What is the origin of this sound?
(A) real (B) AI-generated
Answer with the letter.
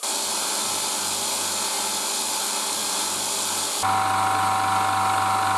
A